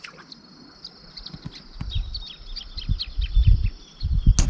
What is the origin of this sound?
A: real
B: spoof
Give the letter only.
A